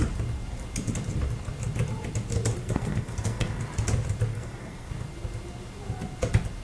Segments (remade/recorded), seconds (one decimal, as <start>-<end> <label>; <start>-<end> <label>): 0.0-2.6 recorded; 2.6-3.6 remade; 3.6-4.3 recorded; 4.3-4.9 remade; 4.9-6.6 recorded